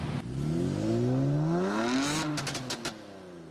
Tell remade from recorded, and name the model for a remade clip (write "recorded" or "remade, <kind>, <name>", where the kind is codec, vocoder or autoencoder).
recorded